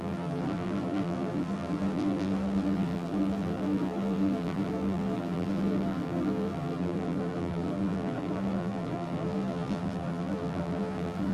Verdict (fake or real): fake